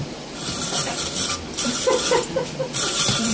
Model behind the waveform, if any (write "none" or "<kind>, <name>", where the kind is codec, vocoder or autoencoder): none